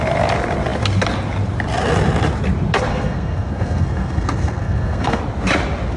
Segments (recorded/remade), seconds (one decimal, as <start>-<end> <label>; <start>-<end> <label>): 0.0-2.9 recorded; 2.9-5.2 remade; 5.2-6.0 recorded